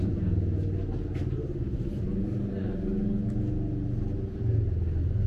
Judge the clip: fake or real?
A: real